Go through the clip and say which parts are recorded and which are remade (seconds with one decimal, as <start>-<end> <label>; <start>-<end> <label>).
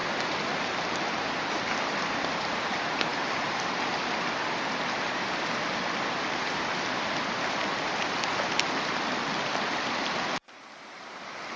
0.0-11.6 recorded